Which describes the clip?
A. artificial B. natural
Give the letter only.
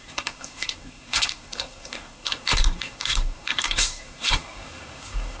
A